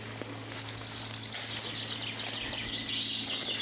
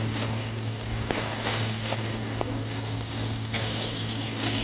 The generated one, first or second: second